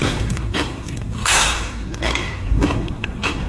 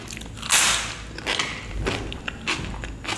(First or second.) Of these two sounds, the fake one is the first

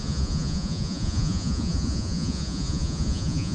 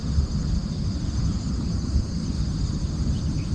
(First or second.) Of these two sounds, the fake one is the first